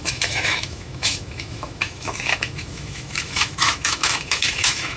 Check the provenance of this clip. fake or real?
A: fake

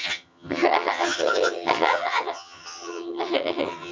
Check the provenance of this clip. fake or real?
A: fake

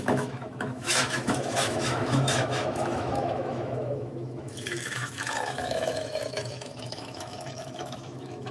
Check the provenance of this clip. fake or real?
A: fake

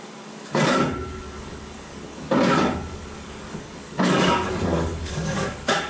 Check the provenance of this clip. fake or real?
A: fake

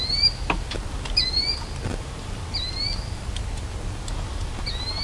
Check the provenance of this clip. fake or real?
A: real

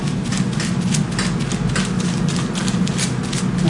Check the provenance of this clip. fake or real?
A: real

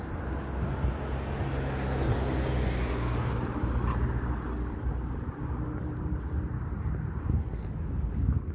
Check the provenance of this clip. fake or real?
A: real